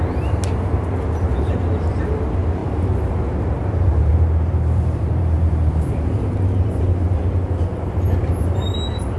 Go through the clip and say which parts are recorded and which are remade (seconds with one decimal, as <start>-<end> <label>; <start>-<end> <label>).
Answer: 0.0-2.6 recorded; 2.6-3.2 remade; 3.2-4.1 recorded; 4.1-6.8 remade; 6.8-7.7 recorded; 7.7-8.7 remade; 8.7-9.2 recorded